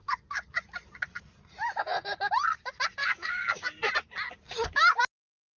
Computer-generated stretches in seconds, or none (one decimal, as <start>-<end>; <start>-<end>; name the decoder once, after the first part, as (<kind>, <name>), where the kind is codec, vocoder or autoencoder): 3.0-3.9 (codec, DAC)